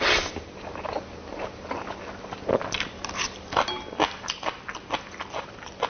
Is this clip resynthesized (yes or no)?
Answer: no